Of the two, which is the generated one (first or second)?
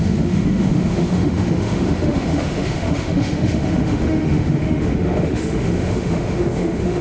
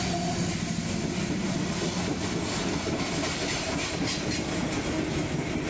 first